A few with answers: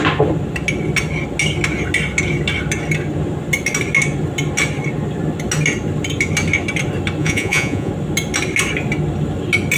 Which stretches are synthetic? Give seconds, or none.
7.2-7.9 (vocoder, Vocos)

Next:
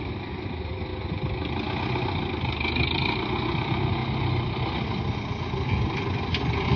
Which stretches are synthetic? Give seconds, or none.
none

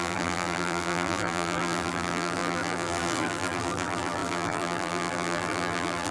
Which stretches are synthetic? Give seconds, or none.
0.0-6.1 (vocoder, BigVGAN v2)

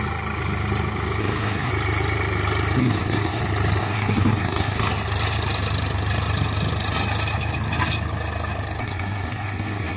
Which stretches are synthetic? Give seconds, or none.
1.2-1.7 (codec, SNAC); 2.8-3.4; 3.8-4.9; 8.8-10.0

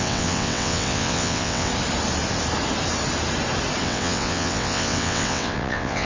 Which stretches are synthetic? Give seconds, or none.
0.0-1.7 (vocoder, WaveNeXt); 3.8-6.1